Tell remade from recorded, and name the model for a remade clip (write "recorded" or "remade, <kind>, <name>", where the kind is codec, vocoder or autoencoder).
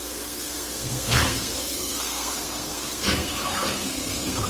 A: remade, codec, SNAC